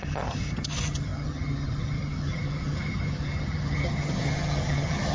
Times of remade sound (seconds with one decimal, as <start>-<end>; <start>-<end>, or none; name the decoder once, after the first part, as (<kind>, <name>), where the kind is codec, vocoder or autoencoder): 0.0-5.1 (vocoder, HiFi-GAN)